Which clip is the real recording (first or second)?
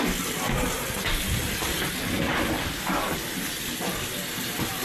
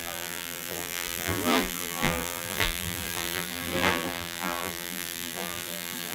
first